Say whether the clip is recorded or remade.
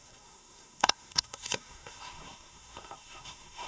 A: remade